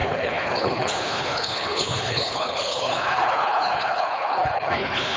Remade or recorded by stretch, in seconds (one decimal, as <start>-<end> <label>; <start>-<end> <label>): 0.0-5.2 remade